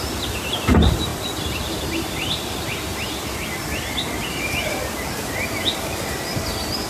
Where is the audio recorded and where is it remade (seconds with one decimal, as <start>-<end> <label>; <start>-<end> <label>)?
0.0-1.1 recorded; 1.1-4.4 remade; 4.4-6.9 recorded

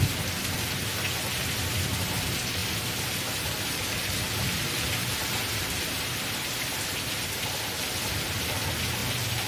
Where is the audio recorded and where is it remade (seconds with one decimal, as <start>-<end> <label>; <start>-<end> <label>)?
0.0-2.6 recorded; 2.6-7.3 remade; 7.3-9.5 recorded

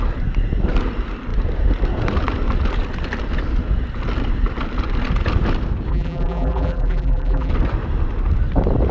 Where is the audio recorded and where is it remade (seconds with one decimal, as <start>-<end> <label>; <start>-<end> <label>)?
0.0-5.9 recorded; 5.9-7.5 remade; 7.5-8.9 recorded